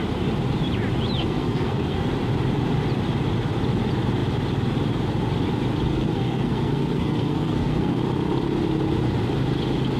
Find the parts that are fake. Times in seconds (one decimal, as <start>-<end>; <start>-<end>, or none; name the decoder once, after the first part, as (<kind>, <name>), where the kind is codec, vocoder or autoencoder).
1.2-2.1 (codec, SNAC); 5.9-8.0